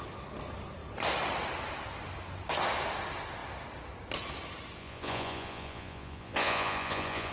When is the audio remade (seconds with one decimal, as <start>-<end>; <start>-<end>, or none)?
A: 4.8-7.3